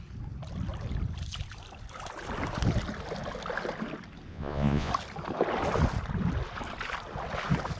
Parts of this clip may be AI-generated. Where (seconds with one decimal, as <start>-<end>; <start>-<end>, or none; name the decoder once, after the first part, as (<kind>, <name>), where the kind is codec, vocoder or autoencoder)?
4.3-4.9 (vocoder, Vocos)

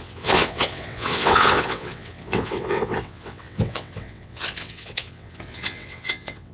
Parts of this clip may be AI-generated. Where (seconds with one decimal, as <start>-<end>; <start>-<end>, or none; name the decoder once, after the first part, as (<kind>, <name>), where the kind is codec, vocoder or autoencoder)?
0.0-6.5 (vocoder, WaveNeXt)